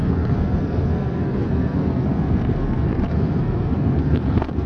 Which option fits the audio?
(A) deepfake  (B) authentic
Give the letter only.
A